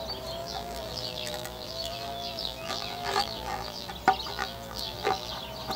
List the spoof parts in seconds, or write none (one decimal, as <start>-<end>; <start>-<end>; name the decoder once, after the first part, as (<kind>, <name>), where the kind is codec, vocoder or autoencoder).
0.4-3.9 (vocoder, BigVGAN v2); 4.3-5.3

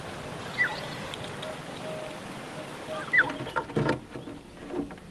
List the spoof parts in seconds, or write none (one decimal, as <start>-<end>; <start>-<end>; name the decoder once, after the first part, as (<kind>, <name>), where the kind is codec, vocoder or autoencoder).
none

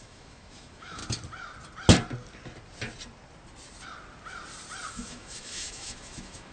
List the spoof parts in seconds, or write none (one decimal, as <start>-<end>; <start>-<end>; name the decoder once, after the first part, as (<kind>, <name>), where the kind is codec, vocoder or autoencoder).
0.0-1.0 (autoencoder, DAC-VAE); 4.9-6.5

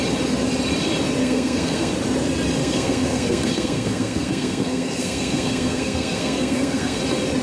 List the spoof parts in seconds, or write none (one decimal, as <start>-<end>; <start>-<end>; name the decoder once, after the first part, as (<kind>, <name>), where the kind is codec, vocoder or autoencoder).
1.2-1.9 (codec, SNAC); 2.6-7.0

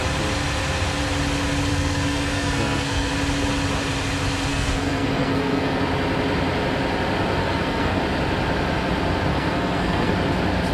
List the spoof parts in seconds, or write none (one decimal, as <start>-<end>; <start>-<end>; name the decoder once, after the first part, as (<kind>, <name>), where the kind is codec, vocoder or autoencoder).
1.7-3.1 (codec, SNAC); 4.5-5.8; 7.4-8.0; 9.3-10.1

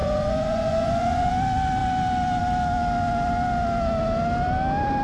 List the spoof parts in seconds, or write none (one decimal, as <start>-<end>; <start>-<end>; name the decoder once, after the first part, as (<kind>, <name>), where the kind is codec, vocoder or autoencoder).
0.0-1.3 (vocoder, Vocos)